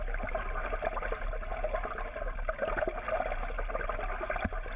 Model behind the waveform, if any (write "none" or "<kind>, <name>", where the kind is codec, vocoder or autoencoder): none